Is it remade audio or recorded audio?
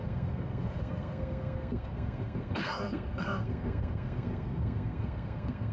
remade